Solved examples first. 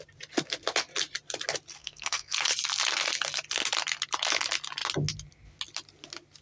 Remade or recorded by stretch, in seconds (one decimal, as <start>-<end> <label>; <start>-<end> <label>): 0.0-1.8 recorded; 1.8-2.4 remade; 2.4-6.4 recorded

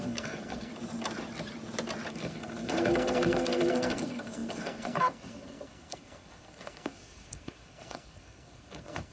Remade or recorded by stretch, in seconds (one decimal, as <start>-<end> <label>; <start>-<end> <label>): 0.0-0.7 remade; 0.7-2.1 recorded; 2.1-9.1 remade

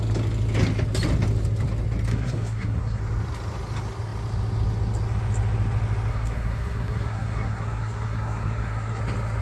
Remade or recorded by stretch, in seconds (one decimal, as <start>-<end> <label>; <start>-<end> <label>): 0.0-2.1 recorded; 2.1-3.0 remade; 3.0-6.1 recorded; 6.1-9.0 remade; 9.0-9.4 recorded

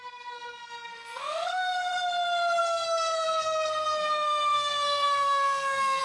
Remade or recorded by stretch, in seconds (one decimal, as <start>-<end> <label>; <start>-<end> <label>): 0.0-1.9 remade; 1.9-2.6 recorded; 2.6-6.0 remade

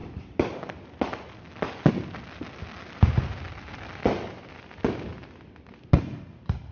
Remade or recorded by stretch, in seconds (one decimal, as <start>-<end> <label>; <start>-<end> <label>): 0.0-6.7 recorded